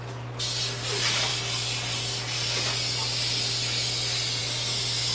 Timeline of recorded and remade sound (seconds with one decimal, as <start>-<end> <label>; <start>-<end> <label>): 0.0-5.1 recorded